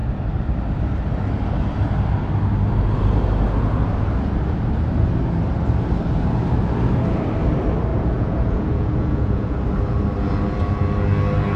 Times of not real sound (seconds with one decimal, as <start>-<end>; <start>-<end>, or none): 7.9-9.6